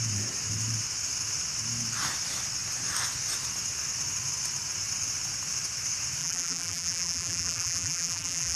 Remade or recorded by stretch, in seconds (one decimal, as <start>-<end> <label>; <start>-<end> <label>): 0.0-6.2 recorded; 6.2-8.6 remade

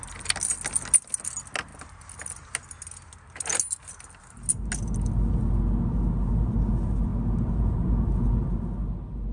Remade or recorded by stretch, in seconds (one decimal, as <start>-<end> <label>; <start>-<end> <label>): 0.0-9.3 recorded